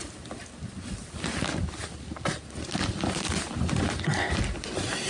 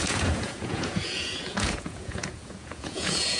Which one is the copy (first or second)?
second